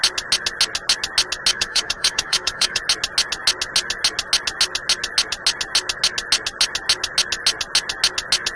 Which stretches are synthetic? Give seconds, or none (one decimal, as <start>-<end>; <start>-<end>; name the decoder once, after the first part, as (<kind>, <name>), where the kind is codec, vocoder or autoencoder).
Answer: 1.5-2.8 (autoencoder, DAC-VAE)